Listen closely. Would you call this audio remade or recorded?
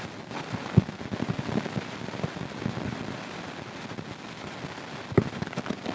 recorded